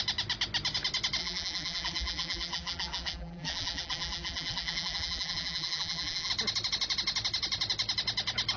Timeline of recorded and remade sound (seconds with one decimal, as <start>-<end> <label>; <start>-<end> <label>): 0.0-1.2 recorded; 1.2-6.3 remade; 6.3-8.6 recorded

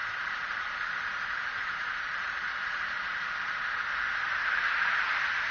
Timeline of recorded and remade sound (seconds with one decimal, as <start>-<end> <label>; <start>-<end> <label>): 0.0-3.3 remade; 3.3-5.5 recorded

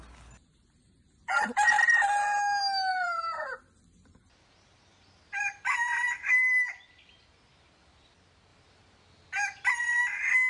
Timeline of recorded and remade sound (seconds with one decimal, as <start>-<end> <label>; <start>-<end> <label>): 0.0-2.9 recorded; 2.9-7.6 remade; 7.6-10.5 recorded